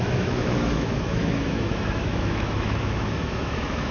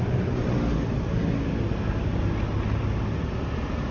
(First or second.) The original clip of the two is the second